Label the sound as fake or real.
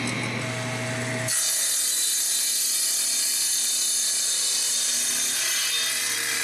real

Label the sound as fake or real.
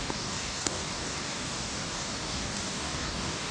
fake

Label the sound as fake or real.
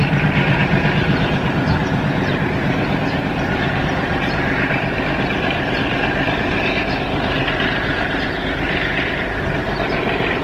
fake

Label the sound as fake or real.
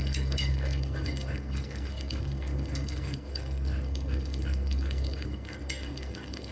fake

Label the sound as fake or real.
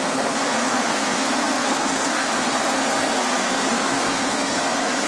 fake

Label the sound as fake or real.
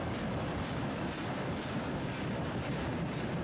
real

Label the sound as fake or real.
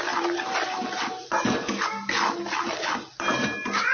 real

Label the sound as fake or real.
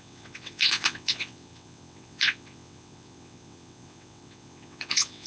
fake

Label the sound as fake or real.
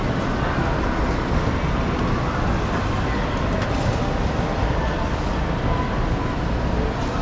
real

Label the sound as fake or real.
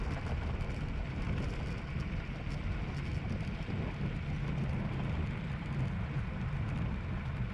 real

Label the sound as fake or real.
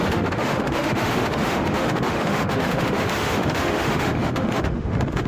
fake